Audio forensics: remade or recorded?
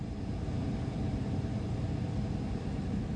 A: recorded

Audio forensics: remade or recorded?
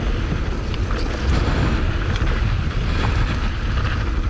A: recorded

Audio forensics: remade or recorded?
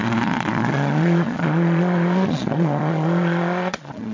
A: remade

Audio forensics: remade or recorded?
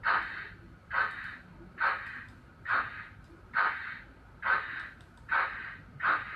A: recorded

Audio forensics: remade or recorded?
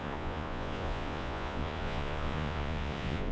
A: remade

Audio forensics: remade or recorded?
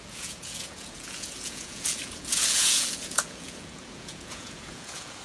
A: remade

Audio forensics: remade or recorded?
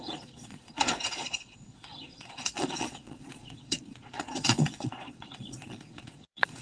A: remade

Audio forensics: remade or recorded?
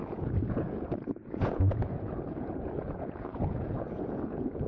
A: remade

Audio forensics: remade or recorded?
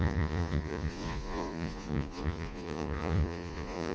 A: remade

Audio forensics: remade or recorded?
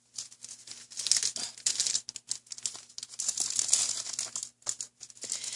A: recorded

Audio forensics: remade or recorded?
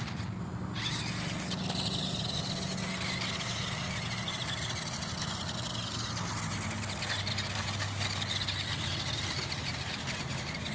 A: recorded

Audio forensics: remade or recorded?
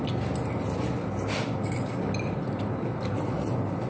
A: recorded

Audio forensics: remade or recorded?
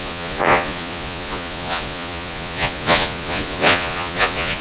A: remade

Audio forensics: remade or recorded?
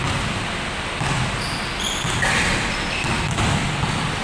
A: recorded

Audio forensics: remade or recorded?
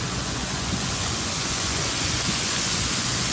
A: remade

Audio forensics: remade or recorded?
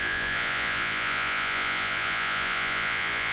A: remade